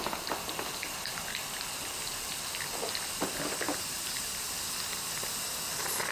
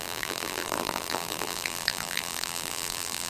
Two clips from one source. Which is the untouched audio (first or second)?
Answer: first